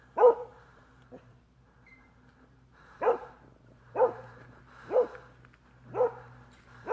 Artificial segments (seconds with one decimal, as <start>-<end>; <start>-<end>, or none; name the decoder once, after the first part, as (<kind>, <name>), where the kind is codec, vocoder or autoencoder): 0.5-4.6 (vocoder, BigVGAN v2)